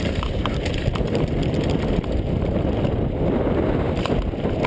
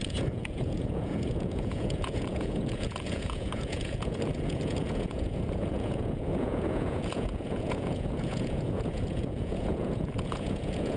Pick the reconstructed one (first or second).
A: second